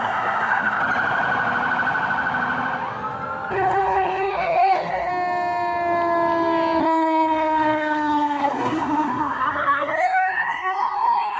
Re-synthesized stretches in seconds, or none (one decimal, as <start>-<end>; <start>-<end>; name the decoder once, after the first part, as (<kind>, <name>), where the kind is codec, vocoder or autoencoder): 0.0-0.8 (codec, SNAC); 3.5-5.1; 6.8-11.4